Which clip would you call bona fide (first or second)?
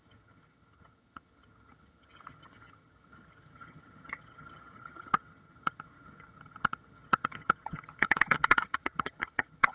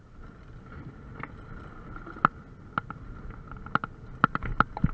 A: second